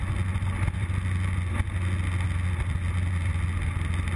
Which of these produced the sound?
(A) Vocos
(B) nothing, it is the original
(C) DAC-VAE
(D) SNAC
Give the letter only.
B